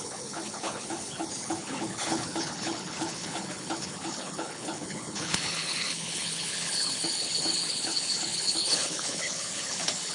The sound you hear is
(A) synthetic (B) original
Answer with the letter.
A